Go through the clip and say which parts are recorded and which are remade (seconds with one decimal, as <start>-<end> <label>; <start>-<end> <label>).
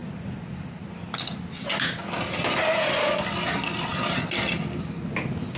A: 0.0-5.6 recorded